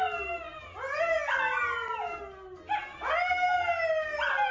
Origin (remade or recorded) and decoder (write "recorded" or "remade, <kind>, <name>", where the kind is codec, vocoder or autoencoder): recorded